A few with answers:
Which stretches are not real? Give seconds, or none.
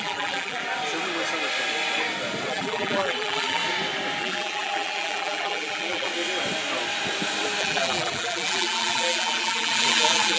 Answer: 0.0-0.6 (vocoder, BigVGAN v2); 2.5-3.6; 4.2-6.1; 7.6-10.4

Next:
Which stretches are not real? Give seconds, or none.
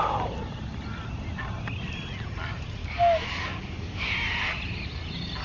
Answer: 2.8-4.1 (codec, DAC)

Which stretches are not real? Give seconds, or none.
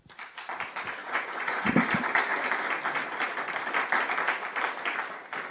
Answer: 1.0-1.7 (vocoder, Vocos)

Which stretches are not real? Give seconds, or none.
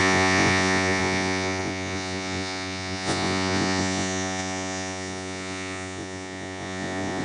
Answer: 0.0-7.2 (vocoder, Vocos)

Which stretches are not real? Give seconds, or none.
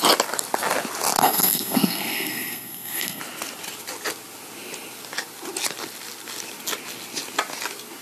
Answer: 1.2-3.2 (codec, SNAC)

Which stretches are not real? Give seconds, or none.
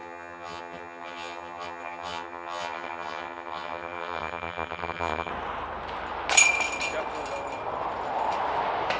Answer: 0.0-5.3 (vocoder, HiFi-GAN)